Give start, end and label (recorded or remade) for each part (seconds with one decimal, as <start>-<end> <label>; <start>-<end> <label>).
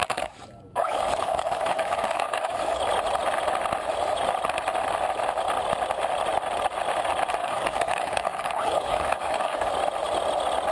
0.0-2.8 remade; 2.8-7.4 recorded; 7.4-9.7 remade; 9.7-10.7 recorded